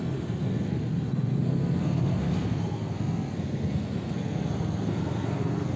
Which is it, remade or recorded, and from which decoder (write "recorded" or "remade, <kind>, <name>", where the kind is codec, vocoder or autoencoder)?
remade, codec, SNAC